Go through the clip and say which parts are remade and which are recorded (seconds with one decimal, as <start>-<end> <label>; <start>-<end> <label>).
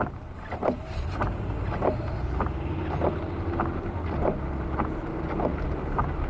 0.0-4.0 remade; 4.0-4.6 recorded; 4.6-6.3 remade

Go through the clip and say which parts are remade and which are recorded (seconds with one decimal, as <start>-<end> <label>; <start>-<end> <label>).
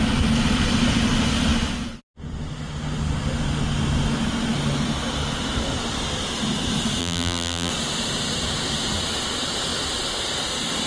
0.0-7.0 recorded; 7.0-7.7 remade; 7.7-10.9 recorded